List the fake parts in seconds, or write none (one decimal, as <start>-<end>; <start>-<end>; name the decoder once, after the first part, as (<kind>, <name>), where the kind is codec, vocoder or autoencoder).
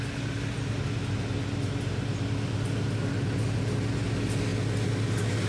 none